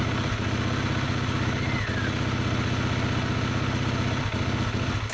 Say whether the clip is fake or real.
real